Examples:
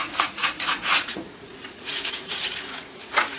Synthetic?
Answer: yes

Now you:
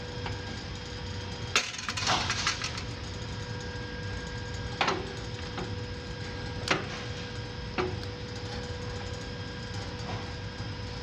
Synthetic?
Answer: no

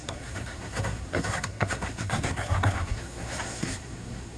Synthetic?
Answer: yes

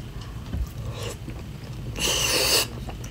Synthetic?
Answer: yes